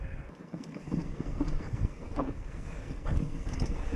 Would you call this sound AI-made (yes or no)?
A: yes